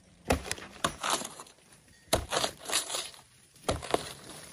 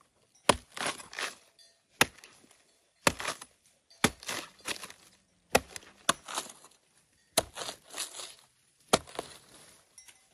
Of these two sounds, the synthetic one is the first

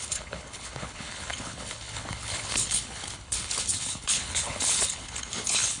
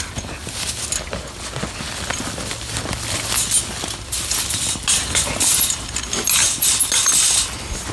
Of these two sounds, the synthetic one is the first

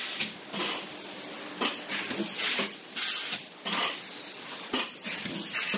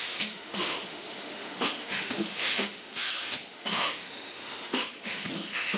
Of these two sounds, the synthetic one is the second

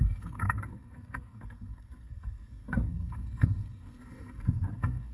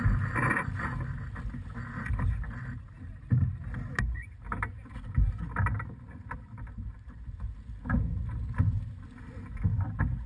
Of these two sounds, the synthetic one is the first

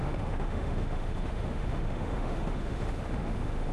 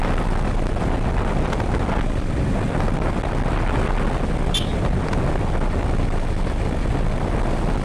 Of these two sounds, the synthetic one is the first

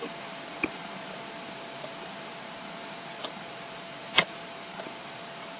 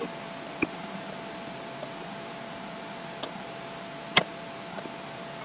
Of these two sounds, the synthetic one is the first